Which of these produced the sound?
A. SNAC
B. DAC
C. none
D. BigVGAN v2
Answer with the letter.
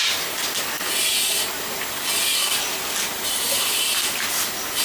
C